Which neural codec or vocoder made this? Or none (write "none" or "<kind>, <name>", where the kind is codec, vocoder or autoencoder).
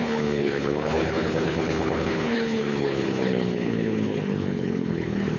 codec, HILCodec